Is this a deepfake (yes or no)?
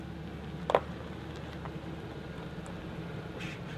no